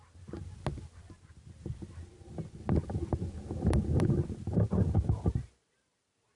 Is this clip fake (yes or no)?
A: no